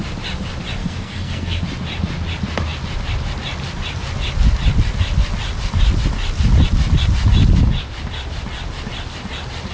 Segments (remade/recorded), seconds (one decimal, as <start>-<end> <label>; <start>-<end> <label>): 0.0-0.8 recorded; 0.8-1.6 remade; 1.6-9.7 recorded